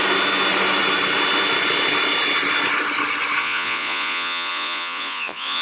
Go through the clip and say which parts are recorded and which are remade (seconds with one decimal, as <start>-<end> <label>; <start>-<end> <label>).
0.0-3.4 recorded; 3.4-5.6 remade